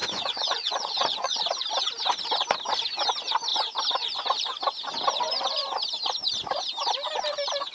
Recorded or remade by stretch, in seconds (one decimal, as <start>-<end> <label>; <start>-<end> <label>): 0.0-1.4 remade; 1.4-7.7 recorded